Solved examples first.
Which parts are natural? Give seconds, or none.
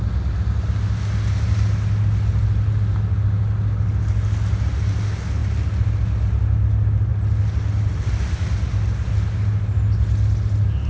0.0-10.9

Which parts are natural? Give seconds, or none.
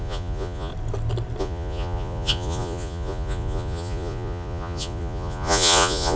0.7-1.4